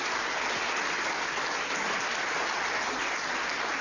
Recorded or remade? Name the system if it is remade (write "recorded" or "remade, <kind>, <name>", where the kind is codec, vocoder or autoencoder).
recorded